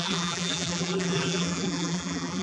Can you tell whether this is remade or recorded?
remade